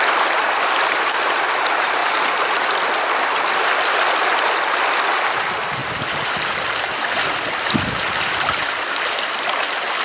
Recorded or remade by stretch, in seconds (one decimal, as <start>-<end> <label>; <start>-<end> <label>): 0.0-10.0 recorded